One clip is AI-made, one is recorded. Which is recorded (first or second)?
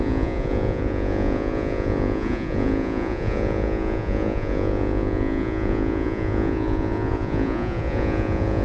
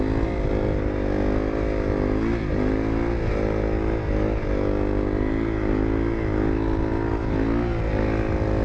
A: second